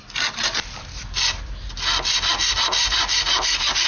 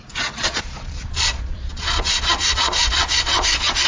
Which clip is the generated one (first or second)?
second